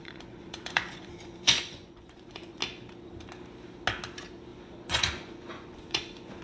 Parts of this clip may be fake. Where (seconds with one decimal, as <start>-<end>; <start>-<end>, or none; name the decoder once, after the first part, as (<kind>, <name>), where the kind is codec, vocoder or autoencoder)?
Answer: 0.0-2.6 (vocoder, Vocos); 4.5-6.4